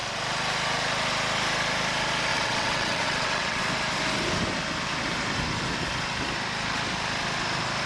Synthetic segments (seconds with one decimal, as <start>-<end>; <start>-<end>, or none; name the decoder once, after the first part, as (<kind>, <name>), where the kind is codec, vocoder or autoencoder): 2.3-3.6 (vocoder, WaveNeXt)